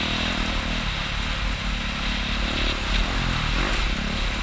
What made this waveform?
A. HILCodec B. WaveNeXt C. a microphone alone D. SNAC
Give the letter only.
C